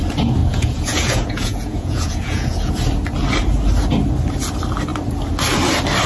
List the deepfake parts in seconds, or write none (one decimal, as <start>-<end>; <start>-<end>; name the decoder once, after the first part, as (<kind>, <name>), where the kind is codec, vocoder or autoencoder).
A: 0.4-2.7 (vocoder, Vocos)